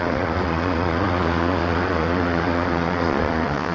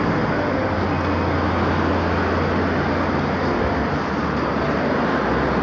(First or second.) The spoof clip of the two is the first